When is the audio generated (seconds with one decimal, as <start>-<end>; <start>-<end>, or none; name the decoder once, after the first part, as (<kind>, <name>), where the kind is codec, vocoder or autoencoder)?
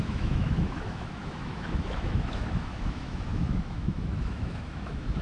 0.0-5.2 (autoencoder, DAC-VAE)